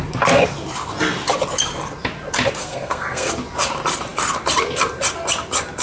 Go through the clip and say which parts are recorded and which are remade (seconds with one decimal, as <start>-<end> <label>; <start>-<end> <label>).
0.0-2.6 recorded; 2.6-3.3 remade; 3.3-5.8 recorded